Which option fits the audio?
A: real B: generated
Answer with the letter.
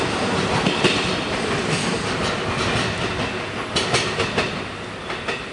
A